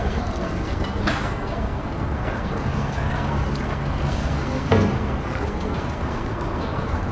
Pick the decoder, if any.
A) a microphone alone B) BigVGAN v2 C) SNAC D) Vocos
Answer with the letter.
C